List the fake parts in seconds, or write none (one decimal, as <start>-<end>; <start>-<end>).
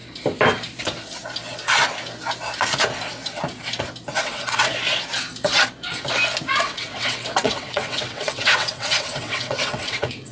4.2-4.7; 6.6-10.3